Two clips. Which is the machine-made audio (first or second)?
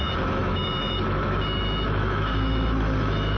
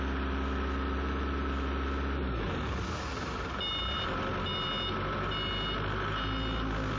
first